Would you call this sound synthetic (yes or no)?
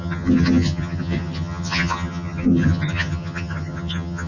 yes